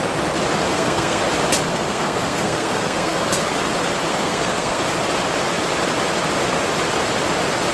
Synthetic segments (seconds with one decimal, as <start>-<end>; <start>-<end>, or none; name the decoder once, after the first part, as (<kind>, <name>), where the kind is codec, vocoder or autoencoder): 0.7-1.2 (codec, SNAC); 1.7-3.5; 4.1-4.8